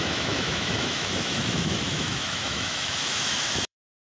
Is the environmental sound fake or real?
fake